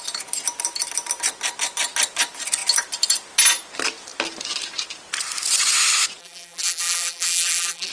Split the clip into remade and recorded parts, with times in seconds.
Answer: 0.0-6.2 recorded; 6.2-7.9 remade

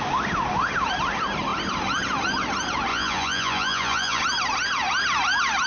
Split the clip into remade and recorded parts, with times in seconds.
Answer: 0.0-2.9 recorded; 2.9-4.2 remade; 4.2-5.7 recorded

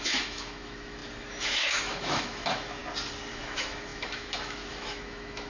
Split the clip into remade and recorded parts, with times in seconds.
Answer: 0.0-2.8 remade; 2.8-3.3 recorded; 3.3-5.5 remade

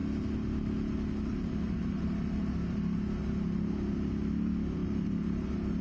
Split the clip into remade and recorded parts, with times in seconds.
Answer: 0.0-1.3 recorded; 1.3-2.5 remade; 2.5-4.8 recorded; 4.8-5.8 remade

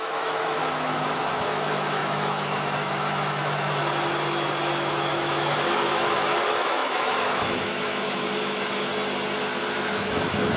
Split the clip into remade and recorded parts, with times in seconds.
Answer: 0.0-3.8 remade; 3.8-4.9 recorded; 4.9-8.9 remade; 8.9-9.7 recorded; 9.7-10.6 remade